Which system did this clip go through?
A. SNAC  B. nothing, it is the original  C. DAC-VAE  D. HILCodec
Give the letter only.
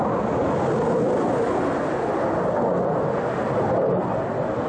B